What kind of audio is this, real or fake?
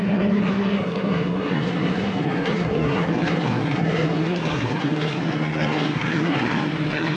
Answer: fake